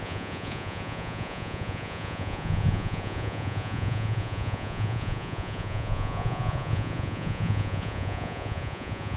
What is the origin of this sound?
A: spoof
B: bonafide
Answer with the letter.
A